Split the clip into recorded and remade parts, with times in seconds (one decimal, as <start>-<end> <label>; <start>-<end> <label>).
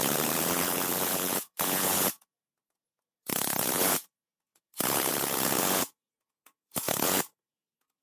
0.0-8.0 remade